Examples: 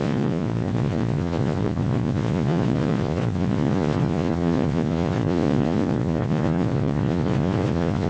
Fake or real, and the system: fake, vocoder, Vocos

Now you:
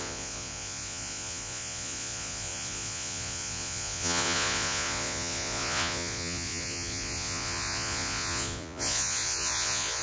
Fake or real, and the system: fake, vocoder, Vocos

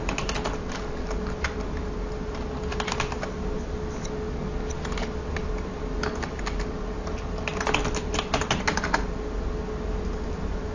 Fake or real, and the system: real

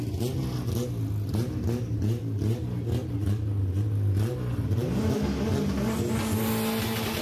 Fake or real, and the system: real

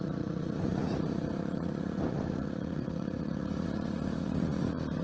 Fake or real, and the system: fake, vocoder, Vocos